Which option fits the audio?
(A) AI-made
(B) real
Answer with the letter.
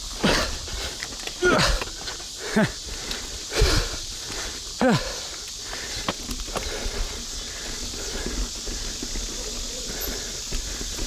B